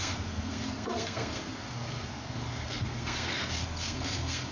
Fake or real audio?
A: fake